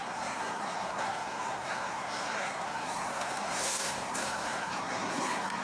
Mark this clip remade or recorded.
remade